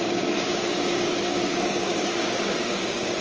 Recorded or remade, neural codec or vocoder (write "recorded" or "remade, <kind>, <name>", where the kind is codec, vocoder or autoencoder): remade, codec, DAC